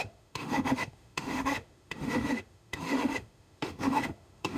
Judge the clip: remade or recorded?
remade